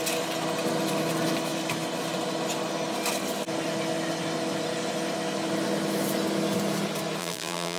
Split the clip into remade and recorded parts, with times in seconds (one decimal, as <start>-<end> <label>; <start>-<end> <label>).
0.0-7.2 recorded; 7.2-7.8 remade